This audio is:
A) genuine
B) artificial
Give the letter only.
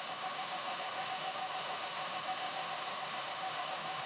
B